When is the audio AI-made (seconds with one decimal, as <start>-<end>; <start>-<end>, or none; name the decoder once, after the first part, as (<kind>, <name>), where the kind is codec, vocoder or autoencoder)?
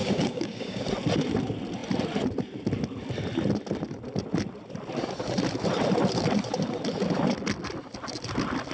0.0-0.8 (codec, DAC)